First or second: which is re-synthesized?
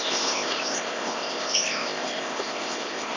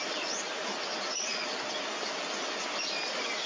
first